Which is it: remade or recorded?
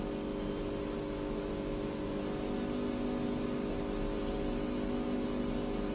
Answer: recorded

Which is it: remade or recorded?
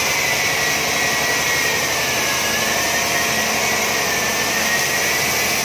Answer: recorded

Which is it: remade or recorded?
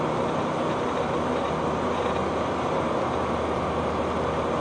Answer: recorded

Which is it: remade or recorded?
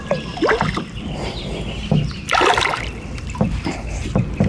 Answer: recorded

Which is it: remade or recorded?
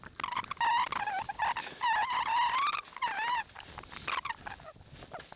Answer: recorded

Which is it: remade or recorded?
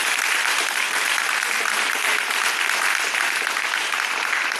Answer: recorded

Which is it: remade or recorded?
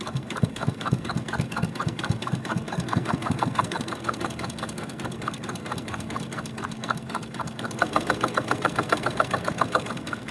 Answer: remade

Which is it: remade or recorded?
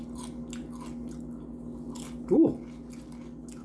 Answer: recorded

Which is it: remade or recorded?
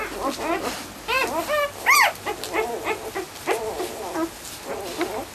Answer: recorded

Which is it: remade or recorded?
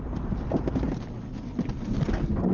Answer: recorded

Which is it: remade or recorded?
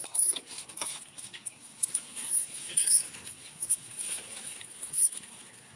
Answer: remade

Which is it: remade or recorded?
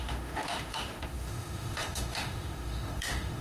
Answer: remade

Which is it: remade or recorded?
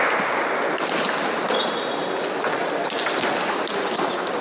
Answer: recorded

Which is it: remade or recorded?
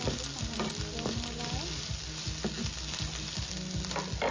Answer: recorded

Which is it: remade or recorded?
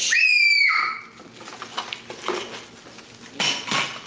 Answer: recorded